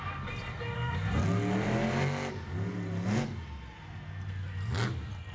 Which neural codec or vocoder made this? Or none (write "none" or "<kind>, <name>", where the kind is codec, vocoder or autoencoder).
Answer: none